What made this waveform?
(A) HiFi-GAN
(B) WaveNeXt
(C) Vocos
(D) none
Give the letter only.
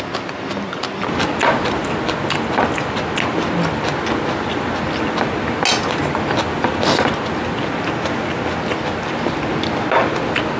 D